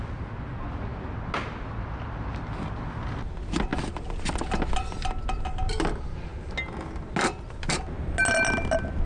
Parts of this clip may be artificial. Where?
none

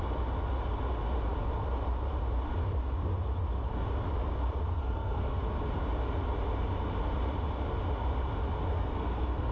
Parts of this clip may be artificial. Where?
4.7-5.4 (codec, SNAC); 8.7-9.5

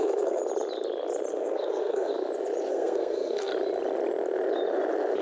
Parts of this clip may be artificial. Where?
0.0-0.4 (codec, SNAC); 1.3-2.1; 2.7-3.5

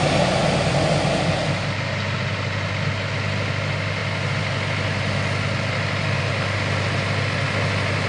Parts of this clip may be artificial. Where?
none